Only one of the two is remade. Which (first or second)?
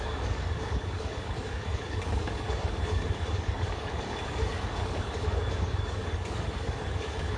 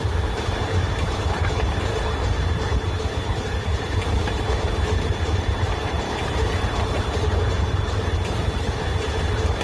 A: first